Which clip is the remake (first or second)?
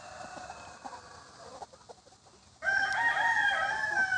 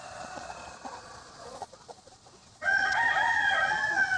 second